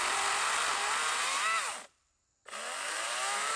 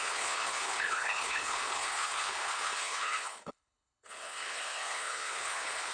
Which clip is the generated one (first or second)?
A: second